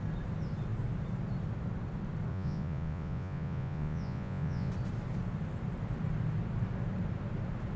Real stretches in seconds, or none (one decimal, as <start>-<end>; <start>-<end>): 0.0-2.3; 4.7-7.8